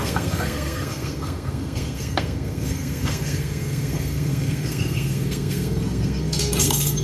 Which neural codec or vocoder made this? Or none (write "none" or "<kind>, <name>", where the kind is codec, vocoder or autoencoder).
codec, SNAC